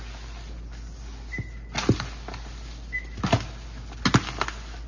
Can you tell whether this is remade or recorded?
recorded